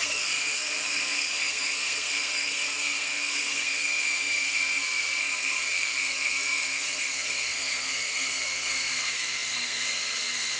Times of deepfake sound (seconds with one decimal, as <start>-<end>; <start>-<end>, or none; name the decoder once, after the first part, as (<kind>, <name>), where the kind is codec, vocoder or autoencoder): 0.0-10.6 (codec, SNAC)